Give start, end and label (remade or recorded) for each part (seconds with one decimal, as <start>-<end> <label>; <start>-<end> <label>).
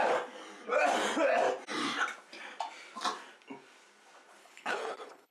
0.0-4.4 recorded; 4.4-5.3 remade